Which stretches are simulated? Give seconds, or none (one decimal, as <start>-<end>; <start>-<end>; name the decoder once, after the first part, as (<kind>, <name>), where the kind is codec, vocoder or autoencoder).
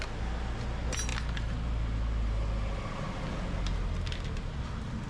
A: none